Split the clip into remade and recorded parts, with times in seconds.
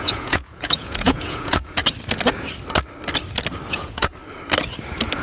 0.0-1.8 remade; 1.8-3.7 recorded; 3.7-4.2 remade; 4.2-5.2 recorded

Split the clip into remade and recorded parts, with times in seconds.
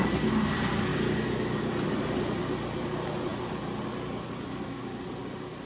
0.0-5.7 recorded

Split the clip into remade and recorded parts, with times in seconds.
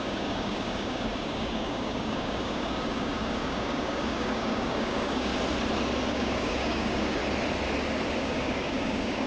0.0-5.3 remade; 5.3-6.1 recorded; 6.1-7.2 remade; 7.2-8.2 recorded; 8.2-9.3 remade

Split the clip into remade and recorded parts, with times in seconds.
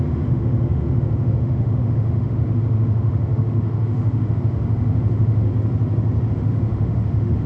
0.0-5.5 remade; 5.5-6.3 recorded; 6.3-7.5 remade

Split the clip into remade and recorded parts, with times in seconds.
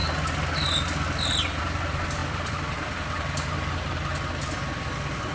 0.0-5.3 recorded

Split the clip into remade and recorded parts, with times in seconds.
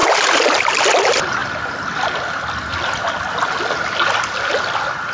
0.0-5.1 recorded